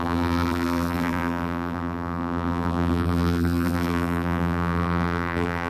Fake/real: fake